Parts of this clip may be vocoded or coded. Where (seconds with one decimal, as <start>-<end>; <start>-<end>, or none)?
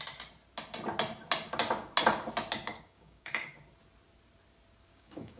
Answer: 2.7-3.6; 4.9-5.4